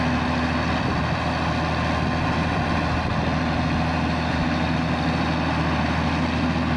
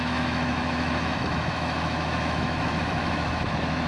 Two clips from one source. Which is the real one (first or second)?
first